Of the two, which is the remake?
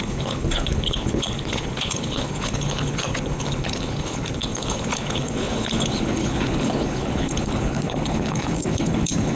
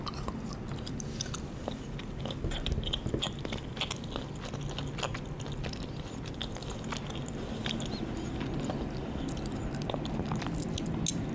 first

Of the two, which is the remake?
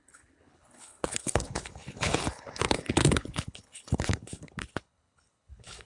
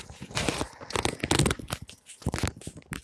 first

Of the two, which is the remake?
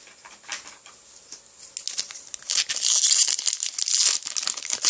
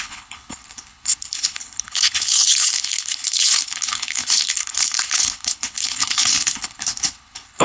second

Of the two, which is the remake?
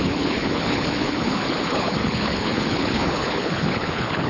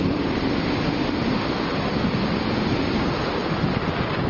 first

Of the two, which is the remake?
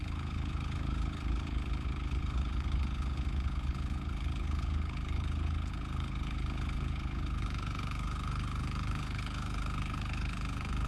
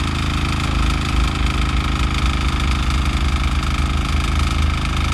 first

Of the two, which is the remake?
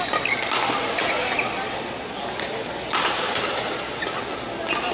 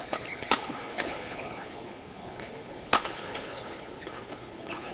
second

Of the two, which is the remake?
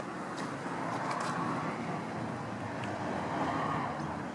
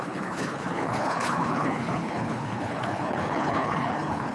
second